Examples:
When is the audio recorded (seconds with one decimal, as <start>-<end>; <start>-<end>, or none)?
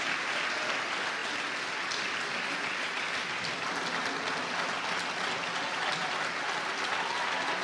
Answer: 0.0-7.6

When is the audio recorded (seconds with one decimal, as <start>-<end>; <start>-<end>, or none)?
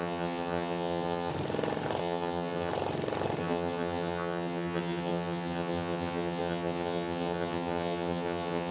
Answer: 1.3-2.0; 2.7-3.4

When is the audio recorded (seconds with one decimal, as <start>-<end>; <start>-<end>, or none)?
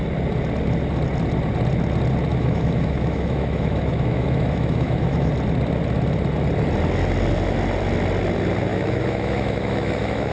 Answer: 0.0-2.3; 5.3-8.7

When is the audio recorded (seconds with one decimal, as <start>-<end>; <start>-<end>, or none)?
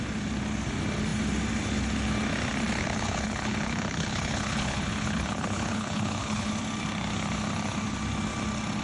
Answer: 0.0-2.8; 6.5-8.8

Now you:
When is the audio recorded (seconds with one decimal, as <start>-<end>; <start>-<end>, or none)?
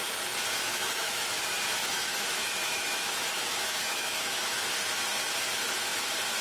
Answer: 0.0-0.7; 1.4-1.8; 4.5-6.4